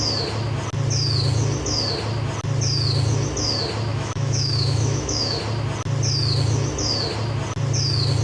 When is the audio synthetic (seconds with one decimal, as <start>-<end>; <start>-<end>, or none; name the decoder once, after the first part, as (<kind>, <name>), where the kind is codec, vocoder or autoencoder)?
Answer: 3.9-5.4 (autoencoder, DAC-VAE)